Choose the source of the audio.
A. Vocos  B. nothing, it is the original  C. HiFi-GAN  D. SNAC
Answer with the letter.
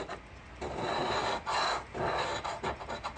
B